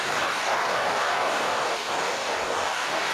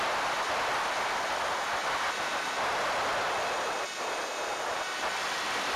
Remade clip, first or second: first